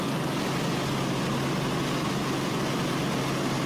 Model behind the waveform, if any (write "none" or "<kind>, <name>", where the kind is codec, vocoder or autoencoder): none